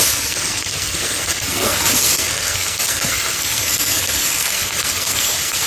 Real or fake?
fake